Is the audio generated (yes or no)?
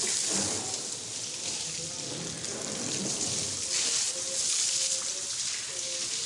no